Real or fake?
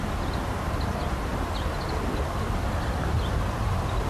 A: real